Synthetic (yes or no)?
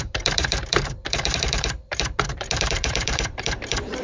yes